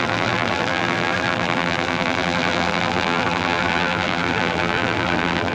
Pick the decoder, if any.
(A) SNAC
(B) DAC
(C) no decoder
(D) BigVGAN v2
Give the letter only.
D